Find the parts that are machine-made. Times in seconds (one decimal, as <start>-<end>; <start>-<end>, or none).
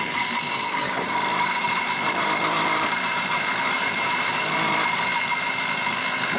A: 0.0-6.4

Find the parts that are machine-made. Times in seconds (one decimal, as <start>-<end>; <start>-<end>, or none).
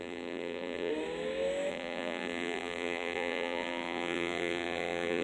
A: 0.0-0.9; 1.7-5.2